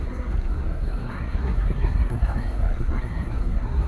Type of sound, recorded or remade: remade